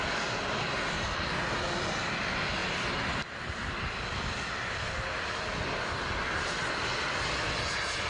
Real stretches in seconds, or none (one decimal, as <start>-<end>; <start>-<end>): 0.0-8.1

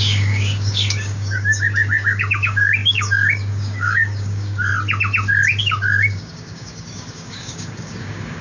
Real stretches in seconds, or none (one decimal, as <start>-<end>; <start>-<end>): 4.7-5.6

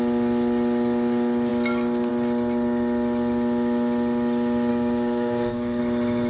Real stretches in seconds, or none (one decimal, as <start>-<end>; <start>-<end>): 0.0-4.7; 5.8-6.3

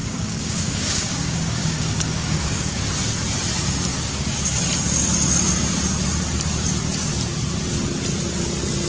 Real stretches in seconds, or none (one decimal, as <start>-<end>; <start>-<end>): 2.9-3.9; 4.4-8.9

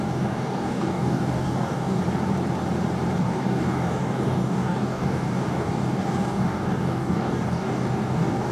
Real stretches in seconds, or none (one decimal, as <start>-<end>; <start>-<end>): 2.0-3.2

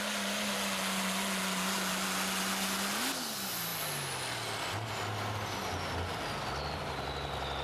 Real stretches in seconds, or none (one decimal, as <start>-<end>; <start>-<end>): 0.0-7.6